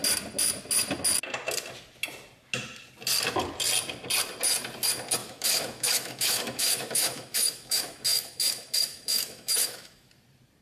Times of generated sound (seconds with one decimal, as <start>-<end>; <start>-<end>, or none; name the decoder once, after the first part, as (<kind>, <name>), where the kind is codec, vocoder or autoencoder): 5.2-10.1 (autoencoder, DAC-VAE)